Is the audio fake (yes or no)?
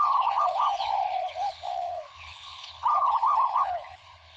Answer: yes